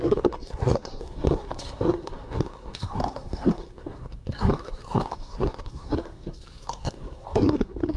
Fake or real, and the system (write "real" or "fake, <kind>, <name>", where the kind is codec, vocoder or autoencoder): fake, codec, SNAC